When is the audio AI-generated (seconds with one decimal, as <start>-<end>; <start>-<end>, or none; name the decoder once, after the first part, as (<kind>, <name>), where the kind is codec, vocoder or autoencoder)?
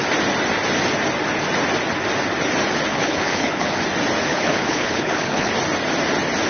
2.9-3.8 (codec, HILCodec); 4.3-5.5